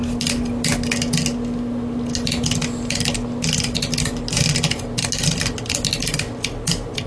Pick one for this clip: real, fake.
real